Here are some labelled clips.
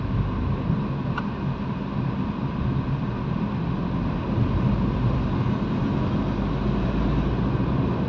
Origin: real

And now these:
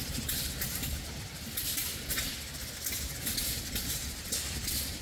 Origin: real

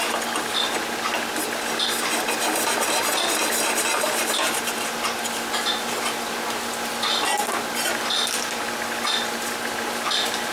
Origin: real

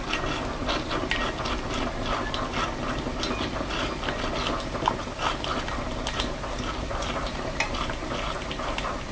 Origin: real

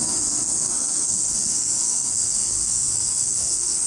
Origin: fake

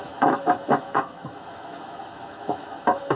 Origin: fake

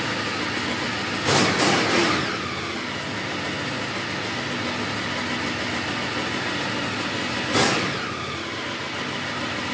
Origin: real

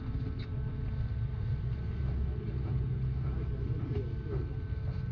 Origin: real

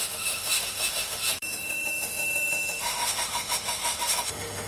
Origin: fake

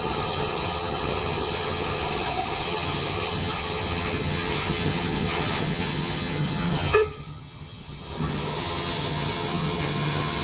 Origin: fake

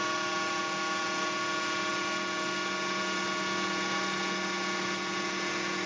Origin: real